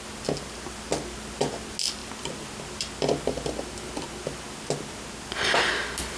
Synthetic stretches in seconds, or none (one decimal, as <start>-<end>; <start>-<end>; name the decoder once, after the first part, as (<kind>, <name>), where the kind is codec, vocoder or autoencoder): none